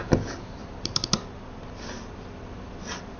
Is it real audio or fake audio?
real